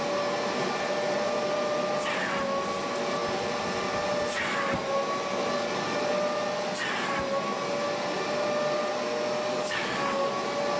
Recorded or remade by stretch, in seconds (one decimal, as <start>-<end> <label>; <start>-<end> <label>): 0.0-9.5 recorded; 9.5-10.3 remade; 10.3-10.8 recorded